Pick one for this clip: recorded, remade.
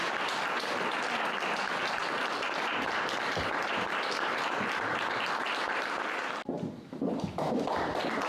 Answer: recorded